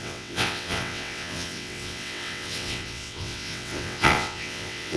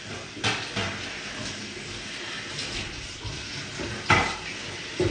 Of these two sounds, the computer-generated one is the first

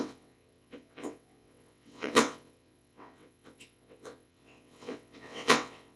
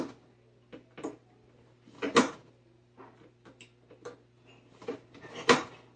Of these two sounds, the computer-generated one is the first